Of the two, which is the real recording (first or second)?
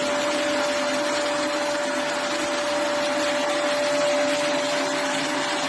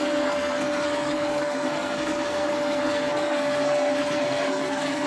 first